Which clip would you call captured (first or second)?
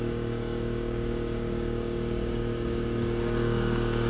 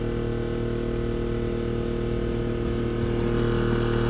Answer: second